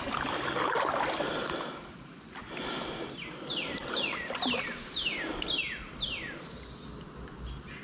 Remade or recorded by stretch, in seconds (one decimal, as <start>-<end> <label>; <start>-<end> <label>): 0.0-7.8 recorded